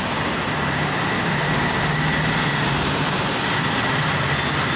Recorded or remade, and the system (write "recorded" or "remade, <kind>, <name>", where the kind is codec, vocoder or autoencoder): recorded